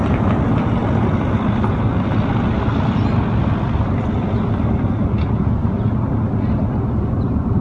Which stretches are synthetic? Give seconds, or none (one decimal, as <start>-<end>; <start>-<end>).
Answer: none